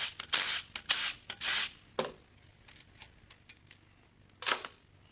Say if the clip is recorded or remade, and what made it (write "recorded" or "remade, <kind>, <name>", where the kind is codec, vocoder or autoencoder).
recorded